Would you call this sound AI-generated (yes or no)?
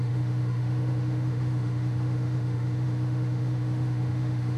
yes